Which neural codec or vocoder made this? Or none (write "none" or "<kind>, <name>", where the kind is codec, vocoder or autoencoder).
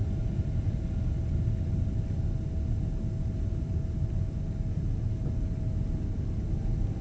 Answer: none